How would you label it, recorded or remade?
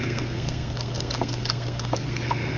remade